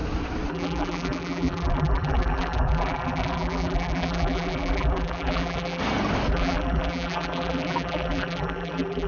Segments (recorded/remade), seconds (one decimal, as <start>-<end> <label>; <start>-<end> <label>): 0.0-0.5 recorded; 0.5-5.8 remade; 5.8-6.3 recorded; 6.3-9.1 remade